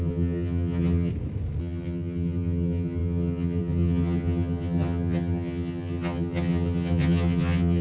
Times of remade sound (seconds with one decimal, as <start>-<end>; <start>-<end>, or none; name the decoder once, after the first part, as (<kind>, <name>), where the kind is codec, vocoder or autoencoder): 0.0-1.1 (vocoder, HiFi-GAN); 1.6-7.8